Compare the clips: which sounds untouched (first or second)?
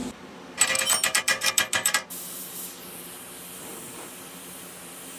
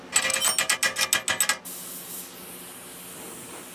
second